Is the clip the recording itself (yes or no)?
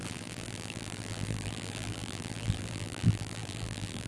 no